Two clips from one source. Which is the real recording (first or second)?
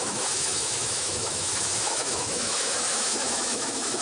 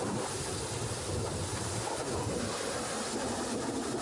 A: second